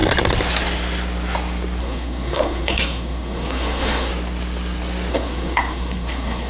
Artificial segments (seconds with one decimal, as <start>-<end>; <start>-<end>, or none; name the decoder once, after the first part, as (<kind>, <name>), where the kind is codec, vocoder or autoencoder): 1.8-4.1 (codec, SNAC); 5.1-6.5